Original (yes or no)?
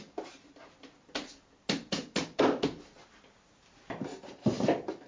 yes